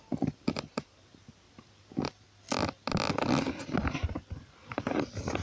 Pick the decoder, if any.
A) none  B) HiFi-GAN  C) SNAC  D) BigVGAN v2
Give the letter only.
A